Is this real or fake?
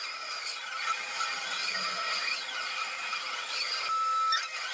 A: real